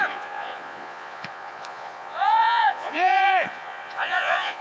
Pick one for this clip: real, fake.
fake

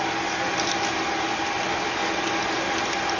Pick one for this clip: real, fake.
real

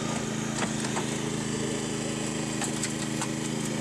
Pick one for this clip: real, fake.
real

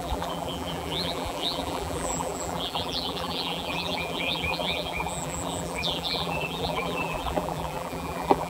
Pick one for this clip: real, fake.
fake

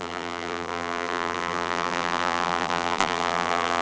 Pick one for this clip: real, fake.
fake